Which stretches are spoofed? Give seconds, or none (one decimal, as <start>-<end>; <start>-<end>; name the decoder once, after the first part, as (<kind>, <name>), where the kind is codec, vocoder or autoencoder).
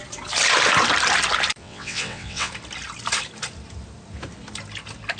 1.6-2.5 (vocoder, WaveNeXt)